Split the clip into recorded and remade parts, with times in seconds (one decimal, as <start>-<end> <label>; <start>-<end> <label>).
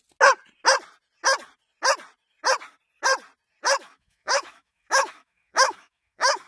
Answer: 0.0-3.8 recorded; 3.8-6.5 remade